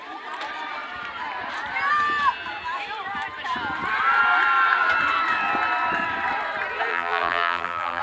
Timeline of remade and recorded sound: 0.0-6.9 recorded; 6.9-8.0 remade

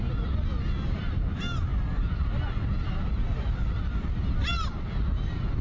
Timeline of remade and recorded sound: 0.0-1.7 recorded; 1.7-3.8 remade; 3.8-5.6 recorded

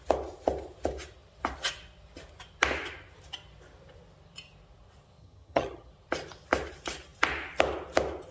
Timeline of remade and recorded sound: 0.0-5.2 recorded; 5.2-5.9 remade; 5.9-8.3 recorded

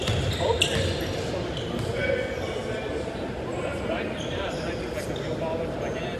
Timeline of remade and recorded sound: 0.0-6.2 recorded

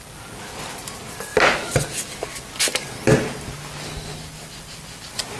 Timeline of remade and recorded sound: 0.0-5.4 recorded